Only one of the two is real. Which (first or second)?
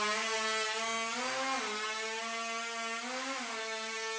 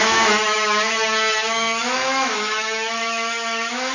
first